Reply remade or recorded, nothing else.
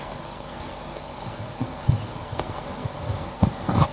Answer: remade